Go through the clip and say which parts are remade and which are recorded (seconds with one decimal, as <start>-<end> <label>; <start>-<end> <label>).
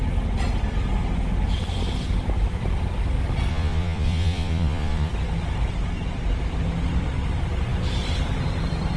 0.0-3.5 recorded; 3.5-5.1 remade; 5.1-9.0 recorded